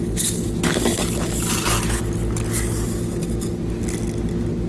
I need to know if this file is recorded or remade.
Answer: recorded